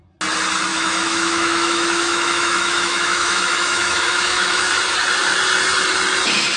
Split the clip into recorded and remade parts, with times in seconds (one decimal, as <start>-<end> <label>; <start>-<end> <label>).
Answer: 0.0-0.7 recorded; 0.7-4.7 remade; 4.7-6.6 recorded